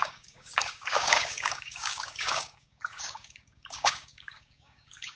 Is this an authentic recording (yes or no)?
no